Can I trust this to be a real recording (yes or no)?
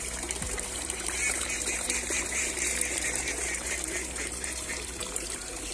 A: no